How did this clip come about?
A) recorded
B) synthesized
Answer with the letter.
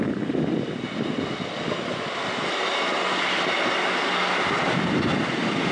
A